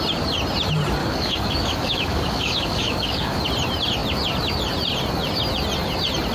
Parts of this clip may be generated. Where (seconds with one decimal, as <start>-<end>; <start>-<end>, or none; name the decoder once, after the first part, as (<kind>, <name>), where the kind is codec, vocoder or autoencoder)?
1.0-3.4 (codec, DAC)